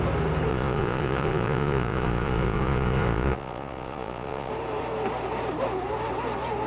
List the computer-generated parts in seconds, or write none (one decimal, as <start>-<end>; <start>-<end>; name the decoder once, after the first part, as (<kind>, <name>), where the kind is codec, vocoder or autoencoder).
0.5-4.5 (vocoder, Vocos)